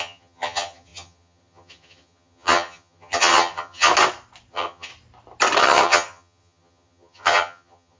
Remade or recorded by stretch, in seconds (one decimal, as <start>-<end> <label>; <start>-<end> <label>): 0.0-3.9 remade; 3.9-4.5 recorded; 4.5-4.9 remade; 4.9-5.6 recorded; 5.6-8.0 remade

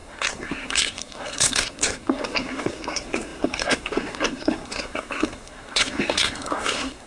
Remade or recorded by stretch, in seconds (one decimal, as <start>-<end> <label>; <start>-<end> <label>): 0.0-7.1 remade

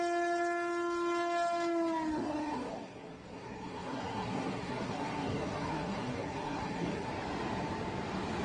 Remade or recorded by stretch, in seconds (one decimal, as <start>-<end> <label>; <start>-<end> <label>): 0.0-2.1 recorded; 2.1-7.1 remade; 7.1-8.4 recorded

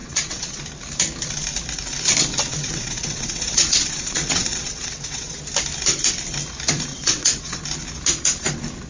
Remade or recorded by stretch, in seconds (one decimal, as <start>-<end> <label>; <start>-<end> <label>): 0.0-0.6 remade; 0.6-2.5 recorded; 2.5-5.4 remade; 5.4-6.9 recorded; 6.9-7.6 remade; 7.6-8.9 recorded